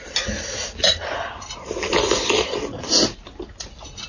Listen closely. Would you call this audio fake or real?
real